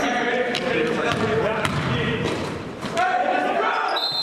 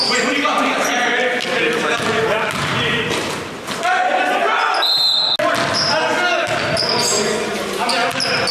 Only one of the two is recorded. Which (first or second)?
second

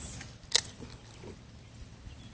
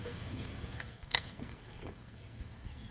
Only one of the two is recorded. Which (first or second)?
first